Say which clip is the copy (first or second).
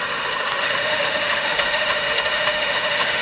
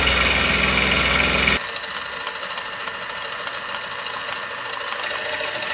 first